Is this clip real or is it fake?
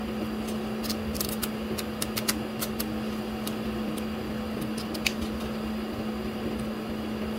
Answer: real